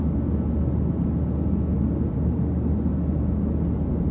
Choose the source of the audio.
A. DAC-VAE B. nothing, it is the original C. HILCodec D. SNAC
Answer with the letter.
B